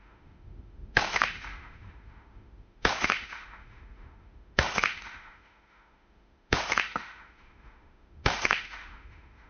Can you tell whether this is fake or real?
fake